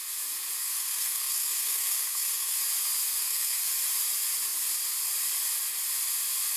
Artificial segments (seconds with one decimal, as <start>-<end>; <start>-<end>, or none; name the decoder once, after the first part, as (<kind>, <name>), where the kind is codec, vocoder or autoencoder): 0.6-2.6 (codec, SNAC); 3.2-3.7